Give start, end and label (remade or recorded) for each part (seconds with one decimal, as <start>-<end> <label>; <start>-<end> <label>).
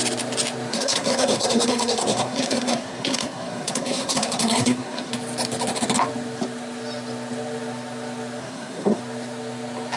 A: 0.0-0.7 recorded; 0.7-5.1 remade; 5.1-8.4 recorded; 8.4-9.0 remade; 9.0-10.0 recorded